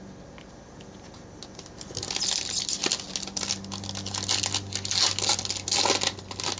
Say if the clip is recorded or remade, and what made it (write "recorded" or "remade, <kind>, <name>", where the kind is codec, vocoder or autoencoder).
recorded